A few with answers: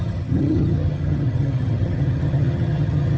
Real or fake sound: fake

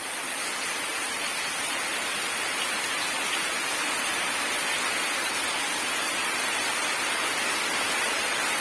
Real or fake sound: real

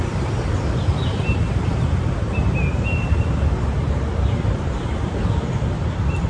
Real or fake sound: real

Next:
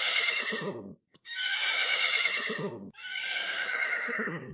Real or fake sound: fake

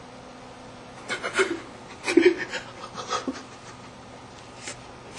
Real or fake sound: real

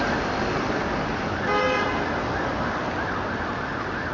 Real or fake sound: real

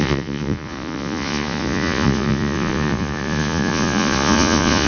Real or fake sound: fake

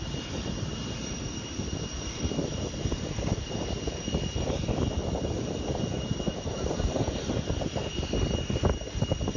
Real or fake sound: real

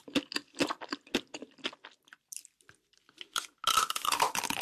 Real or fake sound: real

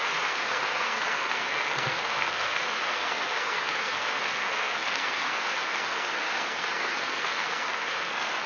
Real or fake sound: fake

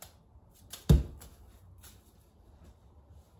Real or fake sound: real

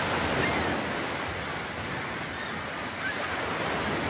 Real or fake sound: real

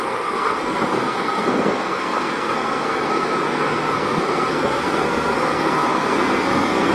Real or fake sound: fake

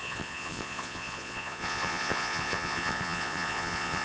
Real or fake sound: fake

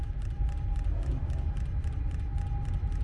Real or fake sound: real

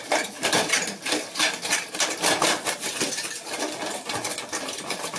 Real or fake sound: real